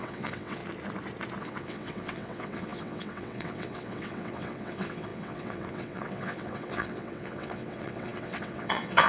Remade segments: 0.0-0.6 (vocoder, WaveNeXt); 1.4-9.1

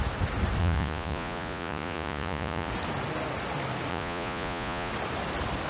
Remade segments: 0.6-2.7 (vocoder, Vocos); 3.9-4.9

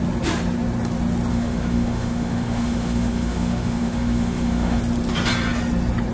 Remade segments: 1.3-4.8 (autoencoder, DAC-VAE)

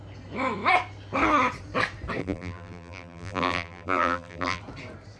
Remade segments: 2.2-4.6 (vocoder, BigVGAN v2)

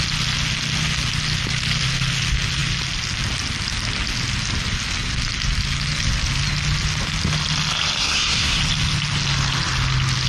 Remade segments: 8.0-8.6 (codec, SNAC)